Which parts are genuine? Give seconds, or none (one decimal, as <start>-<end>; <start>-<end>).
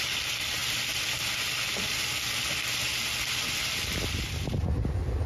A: 0.0-5.3